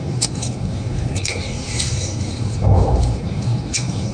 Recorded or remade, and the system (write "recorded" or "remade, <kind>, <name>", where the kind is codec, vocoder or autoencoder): remade, codec, SNAC